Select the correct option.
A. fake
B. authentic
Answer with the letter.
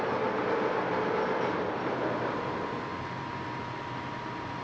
B